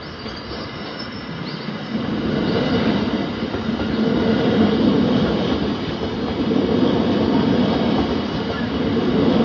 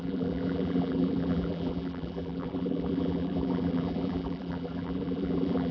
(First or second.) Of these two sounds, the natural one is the first